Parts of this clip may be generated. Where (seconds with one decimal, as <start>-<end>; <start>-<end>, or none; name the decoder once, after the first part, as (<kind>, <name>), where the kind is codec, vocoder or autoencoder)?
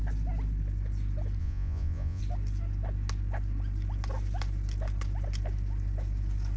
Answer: 1.4-2.2 (vocoder, Vocos)